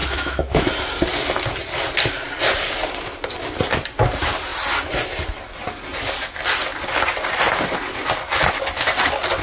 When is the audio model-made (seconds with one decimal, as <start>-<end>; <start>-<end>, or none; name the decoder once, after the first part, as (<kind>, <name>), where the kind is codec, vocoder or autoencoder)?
0.0-0.7 (autoencoder, DAC-VAE)